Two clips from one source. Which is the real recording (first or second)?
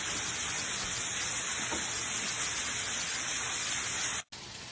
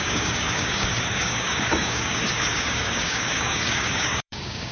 first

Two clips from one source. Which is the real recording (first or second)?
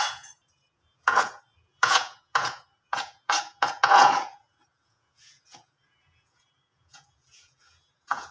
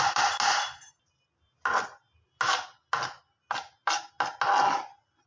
second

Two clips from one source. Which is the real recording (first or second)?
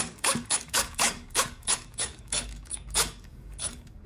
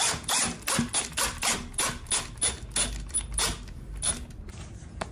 second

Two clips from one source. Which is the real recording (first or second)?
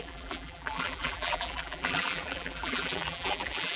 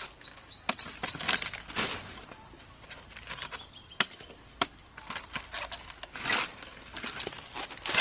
second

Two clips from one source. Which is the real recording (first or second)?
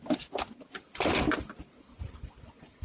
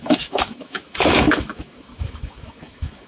first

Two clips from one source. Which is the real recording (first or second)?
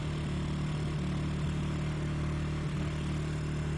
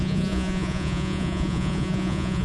first